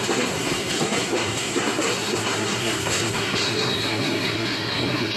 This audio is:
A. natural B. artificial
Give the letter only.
B